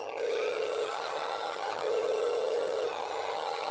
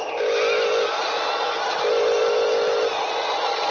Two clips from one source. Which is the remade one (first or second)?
first